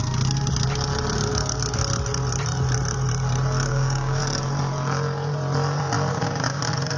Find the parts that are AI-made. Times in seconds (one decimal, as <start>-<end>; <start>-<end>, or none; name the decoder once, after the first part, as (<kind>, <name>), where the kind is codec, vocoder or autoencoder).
3.7-4.2 (codec, DAC); 6.1-6.6